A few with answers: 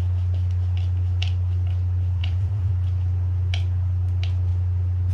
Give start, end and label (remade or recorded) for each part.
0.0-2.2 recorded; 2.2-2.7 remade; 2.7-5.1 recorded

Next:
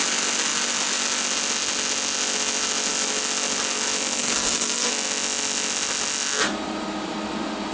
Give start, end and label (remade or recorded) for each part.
0.0-4.2 recorded; 4.2-4.9 remade; 4.9-7.7 recorded

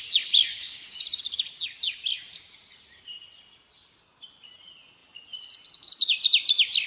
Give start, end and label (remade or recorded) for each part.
0.0-0.5 recorded; 0.5-1.0 remade; 1.0-6.9 recorded